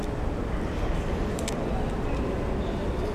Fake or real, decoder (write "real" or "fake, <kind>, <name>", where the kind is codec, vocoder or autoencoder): real